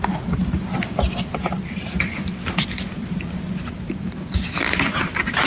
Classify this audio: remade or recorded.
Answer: recorded